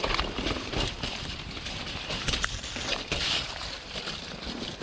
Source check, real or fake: fake